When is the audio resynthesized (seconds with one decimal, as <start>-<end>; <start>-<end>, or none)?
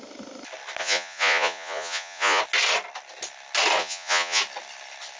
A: 0.8-2.4; 3.8-4.4